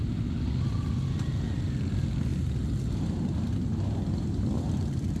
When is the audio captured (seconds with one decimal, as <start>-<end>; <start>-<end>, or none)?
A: 0.0-5.2